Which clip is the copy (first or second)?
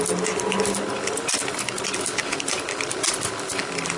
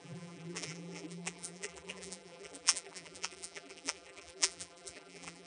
second